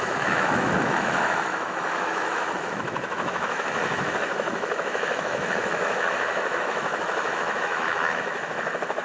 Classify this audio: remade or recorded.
remade